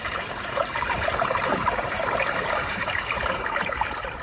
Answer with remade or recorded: remade